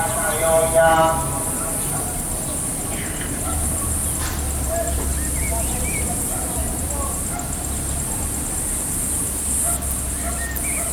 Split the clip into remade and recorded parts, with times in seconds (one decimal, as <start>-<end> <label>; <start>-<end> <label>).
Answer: 0.0-10.9 recorded